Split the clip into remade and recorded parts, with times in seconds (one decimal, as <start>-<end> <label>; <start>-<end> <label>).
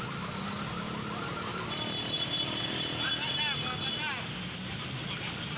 0.0-1.5 recorded; 1.5-3.1 remade; 3.1-5.6 recorded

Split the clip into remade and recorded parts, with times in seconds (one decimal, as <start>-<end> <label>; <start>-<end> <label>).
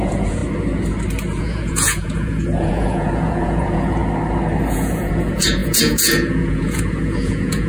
0.0-0.4 remade; 0.4-1.4 recorded; 1.4-4.0 remade; 4.0-4.7 recorded; 4.7-7.7 remade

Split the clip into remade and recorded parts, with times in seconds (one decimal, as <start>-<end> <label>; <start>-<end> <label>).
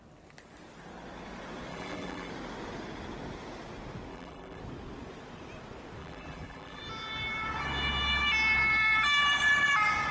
0.0-1.7 recorded; 1.7-2.3 remade; 2.3-4.1 recorded; 4.1-4.6 remade; 4.6-6.0 recorded; 6.0-6.8 remade; 6.8-10.1 recorded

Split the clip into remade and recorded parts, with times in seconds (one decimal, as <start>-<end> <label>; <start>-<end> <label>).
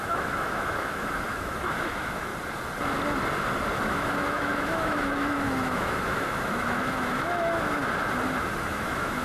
0.0-2.3 remade; 2.3-3.8 recorded; 3.8-7.8 remade; 7.8-8.6 recorded; 8.6-9.2 remade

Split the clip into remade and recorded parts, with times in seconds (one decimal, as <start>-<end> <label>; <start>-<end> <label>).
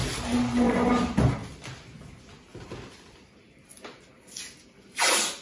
0.0-0.9 remade; 0.9-5.4 recorded